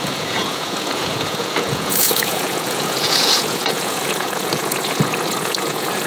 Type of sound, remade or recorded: remade